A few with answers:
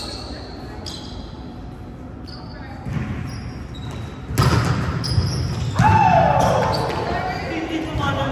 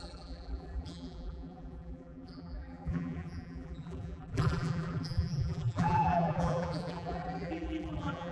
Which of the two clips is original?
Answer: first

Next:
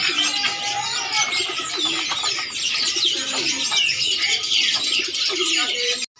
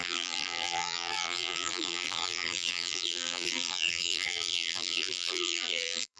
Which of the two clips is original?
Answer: first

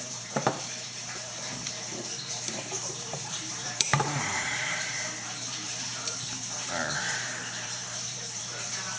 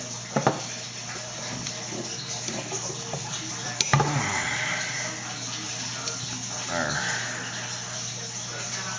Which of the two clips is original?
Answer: second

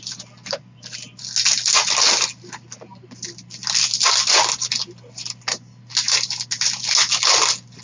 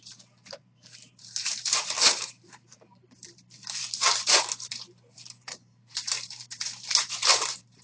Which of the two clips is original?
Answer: first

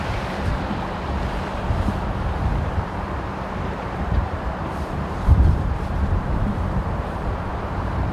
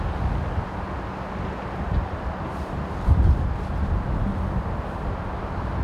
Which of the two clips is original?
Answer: second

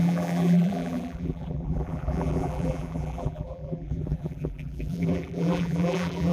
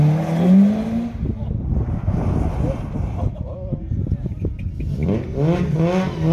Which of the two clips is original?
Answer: second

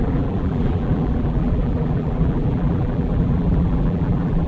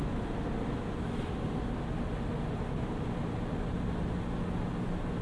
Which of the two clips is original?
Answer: second